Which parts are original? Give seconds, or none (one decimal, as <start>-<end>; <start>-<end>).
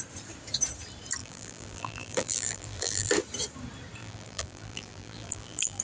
0.0-1.2; 3.1-4.0